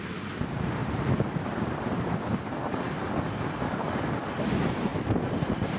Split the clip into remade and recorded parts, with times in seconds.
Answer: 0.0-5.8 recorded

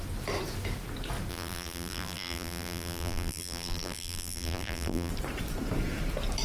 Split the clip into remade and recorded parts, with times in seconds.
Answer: 0.0-1.3 recorded; 1.3-5.1 remade; 5.1-6.4 recorded

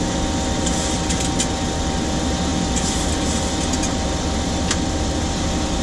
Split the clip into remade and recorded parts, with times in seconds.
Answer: 0.0-5.8 recorded

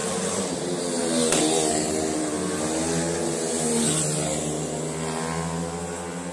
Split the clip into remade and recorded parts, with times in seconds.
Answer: 0.0-0.6 remade; 0.6-6.3 recorded